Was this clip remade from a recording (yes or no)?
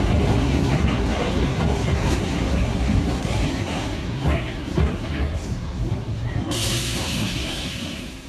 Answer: yes